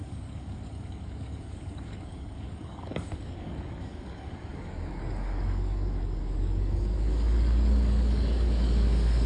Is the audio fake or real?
fake